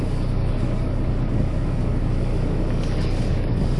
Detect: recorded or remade remade